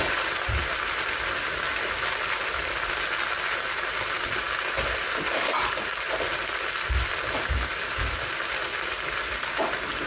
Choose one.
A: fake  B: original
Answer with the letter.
B